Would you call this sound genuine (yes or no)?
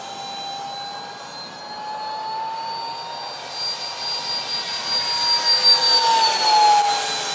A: yes